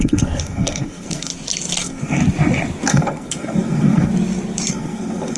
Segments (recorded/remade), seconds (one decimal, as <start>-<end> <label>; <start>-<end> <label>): 0.0-1.3 remade; 1.3-1.8 recorded; 1.8-2.2 remade; 2.2-2.9 recorded; 2.9-4.1 remade; 4.1-4.7 recorded; 4.7-5.4 remade